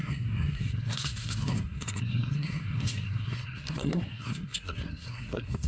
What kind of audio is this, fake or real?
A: fake